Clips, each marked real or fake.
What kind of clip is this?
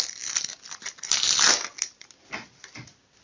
real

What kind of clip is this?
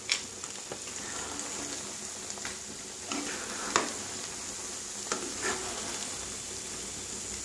real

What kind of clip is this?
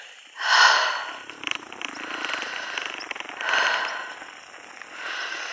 real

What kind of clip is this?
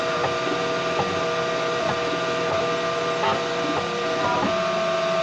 real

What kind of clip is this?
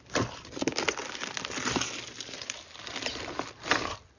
real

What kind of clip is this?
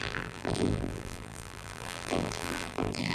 fake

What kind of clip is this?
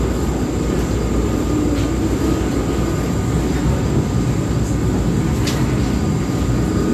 real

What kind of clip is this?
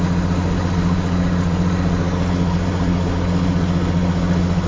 real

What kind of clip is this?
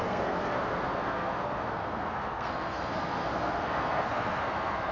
fake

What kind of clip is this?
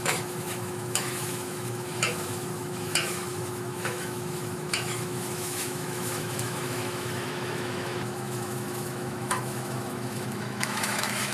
fake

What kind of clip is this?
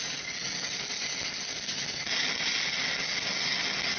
real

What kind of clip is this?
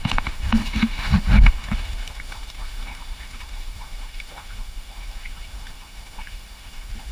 fake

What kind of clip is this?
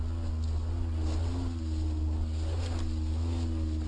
real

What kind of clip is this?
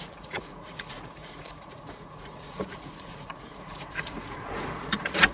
fake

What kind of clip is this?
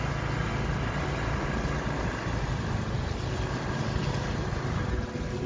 real